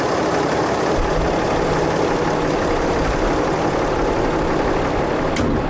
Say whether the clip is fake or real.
real